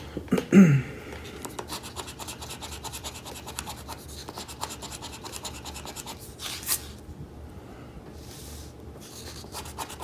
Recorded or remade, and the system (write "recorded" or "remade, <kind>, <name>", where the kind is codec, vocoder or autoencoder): recorded